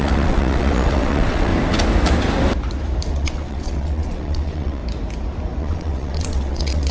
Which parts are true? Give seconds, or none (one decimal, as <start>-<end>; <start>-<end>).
1.5-3.1; 4.8-5.6